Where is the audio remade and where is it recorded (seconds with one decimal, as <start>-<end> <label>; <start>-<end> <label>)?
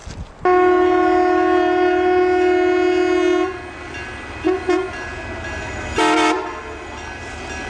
0.0-7.7 recorded